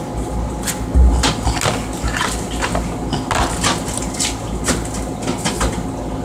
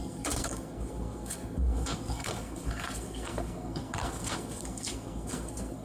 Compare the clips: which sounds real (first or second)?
first